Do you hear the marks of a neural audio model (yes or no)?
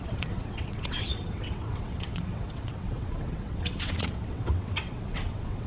yes